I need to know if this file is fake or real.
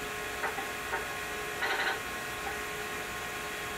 real